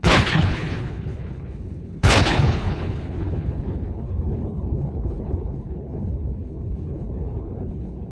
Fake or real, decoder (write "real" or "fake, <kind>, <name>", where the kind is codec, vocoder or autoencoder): fake, codec, HILCodec